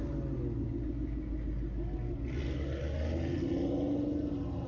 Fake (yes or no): no